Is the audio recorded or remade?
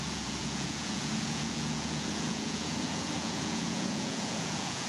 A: remade